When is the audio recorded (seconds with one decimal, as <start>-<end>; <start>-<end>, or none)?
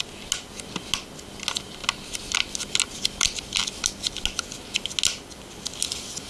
0.0-6.3